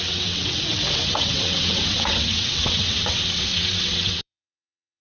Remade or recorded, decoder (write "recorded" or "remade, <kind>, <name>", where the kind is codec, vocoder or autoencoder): remade, vocoder, WaveNeXt